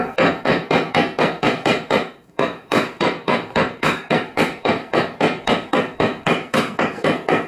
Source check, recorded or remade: remade